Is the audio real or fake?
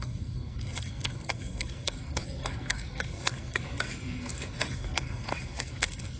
fake